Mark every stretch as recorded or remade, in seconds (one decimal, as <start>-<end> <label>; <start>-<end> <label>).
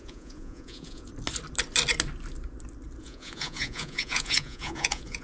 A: 0.0-1.1 remade; 1.1-3.0 recorded; 3.0-5.2 remade